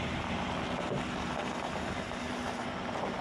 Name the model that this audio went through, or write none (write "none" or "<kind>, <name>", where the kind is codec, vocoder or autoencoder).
none